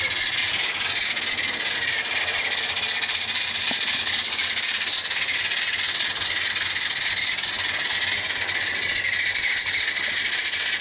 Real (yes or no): yes